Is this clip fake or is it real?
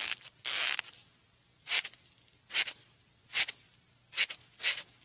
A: real